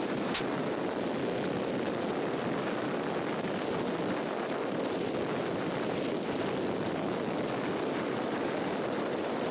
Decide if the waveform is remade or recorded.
recorded